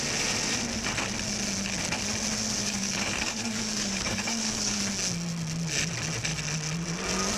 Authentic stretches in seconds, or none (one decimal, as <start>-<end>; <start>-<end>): 0.0-2.6; 4.8-7.4